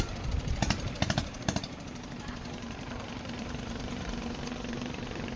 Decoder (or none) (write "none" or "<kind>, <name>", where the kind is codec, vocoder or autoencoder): vocoder, BigVGAN v2